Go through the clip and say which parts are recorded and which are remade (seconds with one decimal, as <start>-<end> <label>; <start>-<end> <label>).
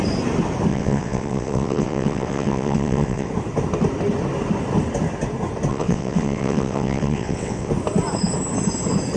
0.0-0.7 recorded; 0.7-3.3 remade; 3.3-5.7 recorded; 5.7-7.7 remade; 7.7-9.2 recorded